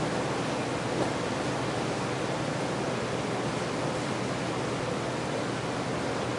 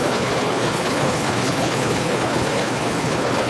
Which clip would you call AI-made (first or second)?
second